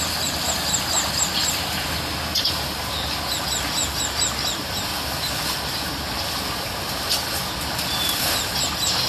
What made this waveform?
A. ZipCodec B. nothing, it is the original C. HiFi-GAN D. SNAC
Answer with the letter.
B